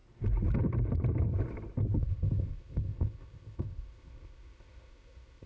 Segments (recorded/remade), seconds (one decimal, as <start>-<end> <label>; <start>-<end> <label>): 0.0-2.0 recorded; 2.0-5.5 remade